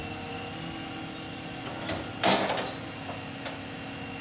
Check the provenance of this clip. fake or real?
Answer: real